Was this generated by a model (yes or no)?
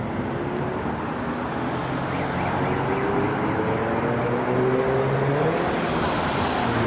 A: no